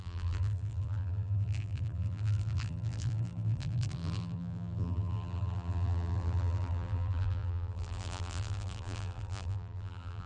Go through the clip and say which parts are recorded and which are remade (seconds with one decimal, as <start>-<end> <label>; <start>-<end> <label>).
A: 0.0-10.3 remade